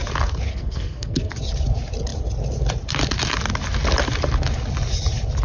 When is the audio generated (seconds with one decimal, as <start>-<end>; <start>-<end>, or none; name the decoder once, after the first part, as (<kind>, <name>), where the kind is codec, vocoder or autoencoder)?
0.5-1.3 (codec, SNAC)